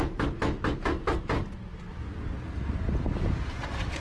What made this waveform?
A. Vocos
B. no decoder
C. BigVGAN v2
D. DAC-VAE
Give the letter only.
B